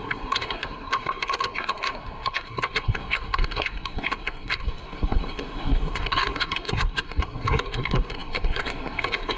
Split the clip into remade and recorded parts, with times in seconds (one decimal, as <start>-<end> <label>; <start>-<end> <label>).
0.0-9.4 remade